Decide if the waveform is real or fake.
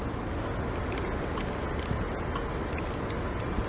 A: real